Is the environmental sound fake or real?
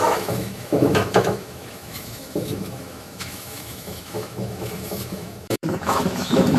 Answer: fake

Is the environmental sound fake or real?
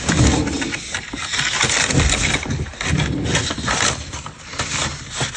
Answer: real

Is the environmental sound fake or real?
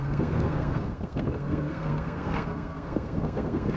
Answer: fake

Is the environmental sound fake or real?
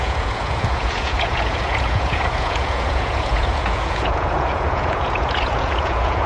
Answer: fake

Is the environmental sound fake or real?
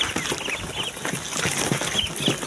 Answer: real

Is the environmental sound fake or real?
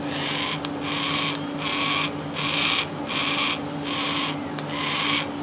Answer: real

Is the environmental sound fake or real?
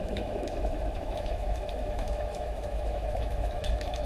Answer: fake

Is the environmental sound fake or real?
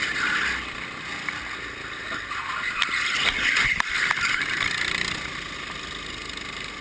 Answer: real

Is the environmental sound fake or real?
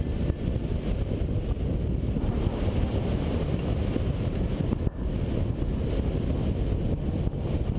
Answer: real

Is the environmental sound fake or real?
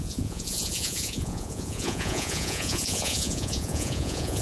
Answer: fake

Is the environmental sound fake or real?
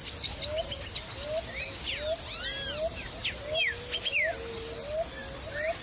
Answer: real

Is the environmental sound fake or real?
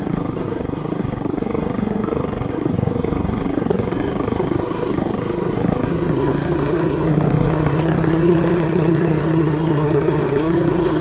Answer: fake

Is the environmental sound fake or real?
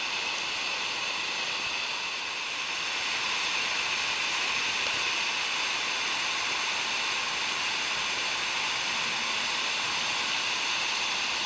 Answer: real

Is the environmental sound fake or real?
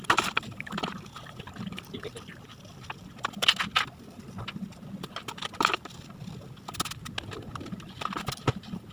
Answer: real